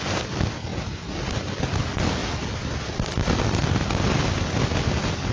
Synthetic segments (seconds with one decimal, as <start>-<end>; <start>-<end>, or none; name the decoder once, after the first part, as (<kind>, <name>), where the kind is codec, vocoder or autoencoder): none